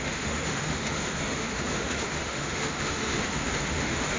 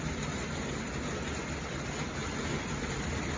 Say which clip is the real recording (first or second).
second